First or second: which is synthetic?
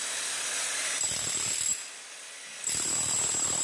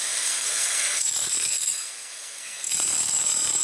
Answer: second